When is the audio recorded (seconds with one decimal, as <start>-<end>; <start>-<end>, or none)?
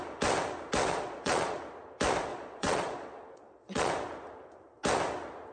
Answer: 0.0-0.9; 1.6-2.3; 3.9-5.5